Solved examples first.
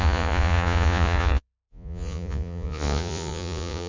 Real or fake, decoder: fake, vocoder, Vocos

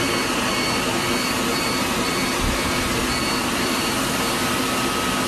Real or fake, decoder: fake, vocoder, BigVGAN v2